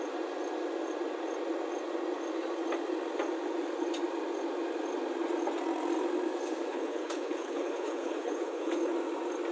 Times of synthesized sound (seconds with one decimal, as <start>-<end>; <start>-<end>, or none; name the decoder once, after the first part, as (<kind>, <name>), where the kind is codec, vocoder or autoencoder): 6.7-8.9 (codec, HILCodec)